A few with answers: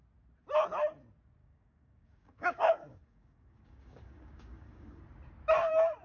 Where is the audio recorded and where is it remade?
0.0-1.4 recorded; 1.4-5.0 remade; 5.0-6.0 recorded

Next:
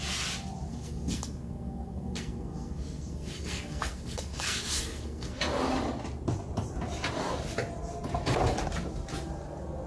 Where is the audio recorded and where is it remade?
0.0-0.7 recorded; 0.7-5.4 remade; 5.4-9.9 recorded